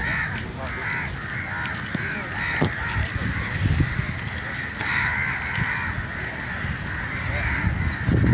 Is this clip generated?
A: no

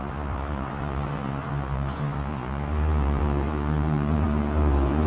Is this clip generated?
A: yes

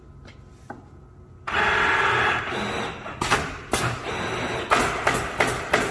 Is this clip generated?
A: no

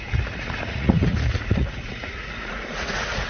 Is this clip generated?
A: yes